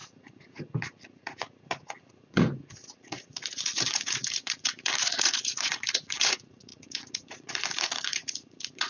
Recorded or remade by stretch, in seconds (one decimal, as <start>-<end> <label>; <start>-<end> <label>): 0.0-8.9 remade